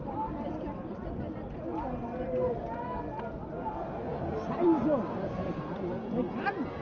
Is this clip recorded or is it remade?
recorded